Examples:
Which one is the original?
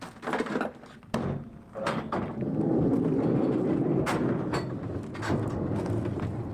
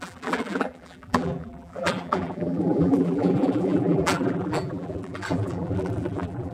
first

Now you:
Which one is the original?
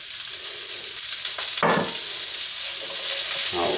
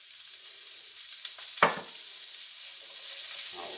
first